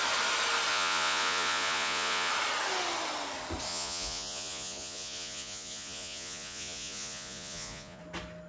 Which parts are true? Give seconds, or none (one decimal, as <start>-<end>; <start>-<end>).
0.0-0.7; 2.3-3.7; 8.0-8.5